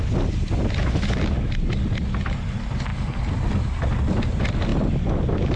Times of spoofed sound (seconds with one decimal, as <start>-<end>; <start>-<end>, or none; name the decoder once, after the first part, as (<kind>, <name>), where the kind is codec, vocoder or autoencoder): none